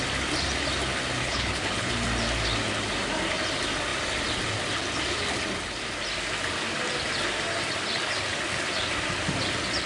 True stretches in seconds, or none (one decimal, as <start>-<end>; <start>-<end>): 0.0-1.2; 1.9-9.9